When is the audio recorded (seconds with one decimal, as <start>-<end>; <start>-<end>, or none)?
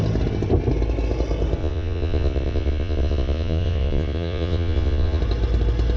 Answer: 0.0-1.6; 5.2-6.0